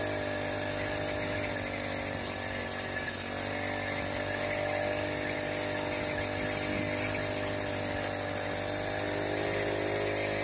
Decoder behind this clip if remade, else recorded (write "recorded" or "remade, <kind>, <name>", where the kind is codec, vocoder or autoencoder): recorded